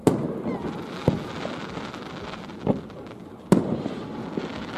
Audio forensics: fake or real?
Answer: real